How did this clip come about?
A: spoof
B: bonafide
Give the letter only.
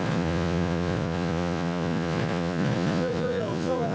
A